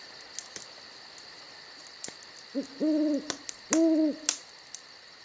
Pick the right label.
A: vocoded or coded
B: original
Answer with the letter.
B